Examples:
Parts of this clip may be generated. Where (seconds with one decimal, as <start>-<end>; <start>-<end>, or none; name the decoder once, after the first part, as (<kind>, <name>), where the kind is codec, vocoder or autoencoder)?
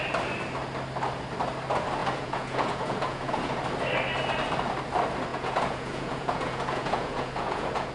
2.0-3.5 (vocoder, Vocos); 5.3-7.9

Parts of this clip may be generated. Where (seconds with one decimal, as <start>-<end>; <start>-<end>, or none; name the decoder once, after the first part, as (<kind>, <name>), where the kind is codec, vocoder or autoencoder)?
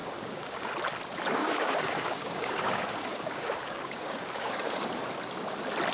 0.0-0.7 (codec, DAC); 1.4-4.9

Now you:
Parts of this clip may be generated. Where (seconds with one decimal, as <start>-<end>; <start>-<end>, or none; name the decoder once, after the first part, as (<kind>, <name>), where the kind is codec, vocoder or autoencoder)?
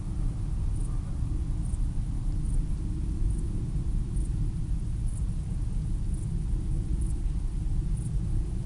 none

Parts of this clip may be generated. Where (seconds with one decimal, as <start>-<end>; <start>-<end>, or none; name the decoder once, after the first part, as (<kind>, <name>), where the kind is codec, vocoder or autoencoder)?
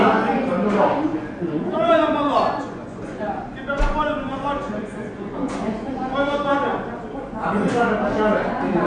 1.1-5.9 (vocoder, Vocos)